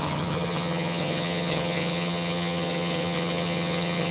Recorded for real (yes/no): no